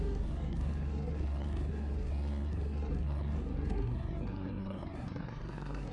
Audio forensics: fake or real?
fake